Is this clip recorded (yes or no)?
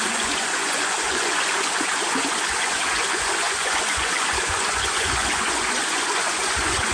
no